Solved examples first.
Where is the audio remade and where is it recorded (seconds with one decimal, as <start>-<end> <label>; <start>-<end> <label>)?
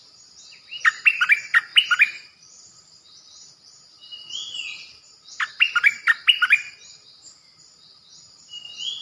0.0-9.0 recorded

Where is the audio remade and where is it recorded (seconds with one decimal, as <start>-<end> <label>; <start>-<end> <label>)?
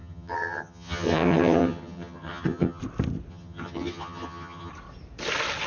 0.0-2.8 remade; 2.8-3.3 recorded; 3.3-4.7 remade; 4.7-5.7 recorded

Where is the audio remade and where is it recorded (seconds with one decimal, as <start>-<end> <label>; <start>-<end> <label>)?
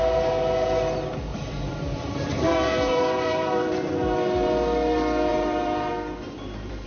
0.0-1.3 recorded; 1.3-3.9 remade; 3.9-5.3 recorded; 5.3-5.9 remade; 5.9-6.9 recorded